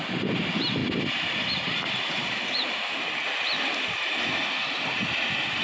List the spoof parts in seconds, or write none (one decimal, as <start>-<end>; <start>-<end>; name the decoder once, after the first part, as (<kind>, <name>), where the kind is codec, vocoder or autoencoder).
0.8-3.1 (vocoder, BigVGAN v2)